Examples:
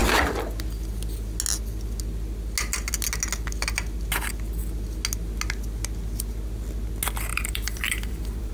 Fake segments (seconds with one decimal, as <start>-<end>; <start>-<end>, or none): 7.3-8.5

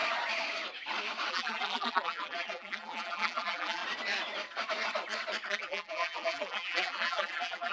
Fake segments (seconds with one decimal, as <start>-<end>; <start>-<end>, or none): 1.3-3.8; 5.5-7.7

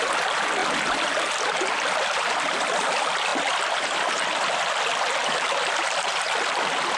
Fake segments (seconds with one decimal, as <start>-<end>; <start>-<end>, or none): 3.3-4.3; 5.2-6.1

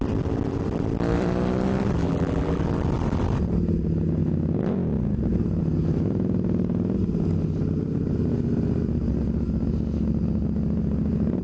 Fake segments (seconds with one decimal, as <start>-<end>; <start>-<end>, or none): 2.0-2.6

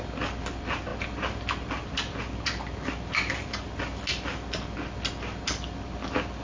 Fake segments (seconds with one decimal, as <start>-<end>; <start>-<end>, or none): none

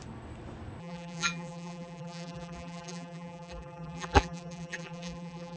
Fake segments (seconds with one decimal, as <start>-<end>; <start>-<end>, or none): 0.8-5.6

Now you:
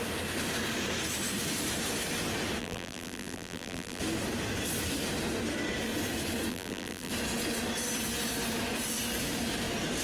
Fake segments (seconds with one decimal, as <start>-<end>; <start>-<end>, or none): 2.6-4.0; 6.5-7.1

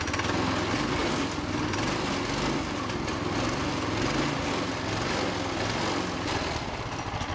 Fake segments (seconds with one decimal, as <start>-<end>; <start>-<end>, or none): none